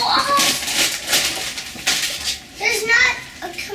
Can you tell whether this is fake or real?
real